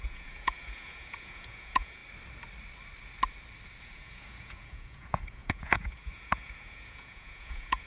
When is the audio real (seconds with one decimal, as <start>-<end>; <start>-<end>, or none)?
2.0-3.8